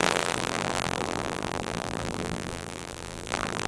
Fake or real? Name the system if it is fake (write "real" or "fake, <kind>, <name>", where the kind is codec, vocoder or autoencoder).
fake, vocoder, BigVGAN v2